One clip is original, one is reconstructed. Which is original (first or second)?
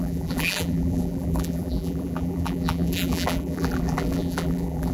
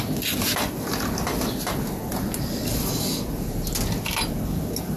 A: second